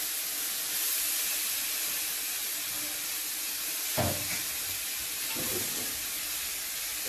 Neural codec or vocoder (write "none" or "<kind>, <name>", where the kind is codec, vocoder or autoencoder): none